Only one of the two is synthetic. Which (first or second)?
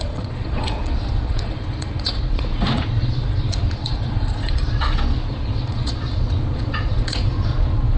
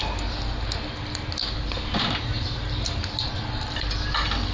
first